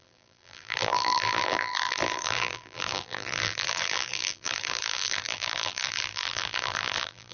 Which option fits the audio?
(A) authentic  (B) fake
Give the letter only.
B